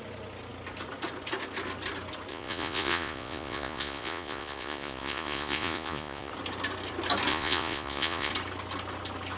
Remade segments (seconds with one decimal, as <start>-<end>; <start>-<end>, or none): 2.3-6.3; 7.3-8.3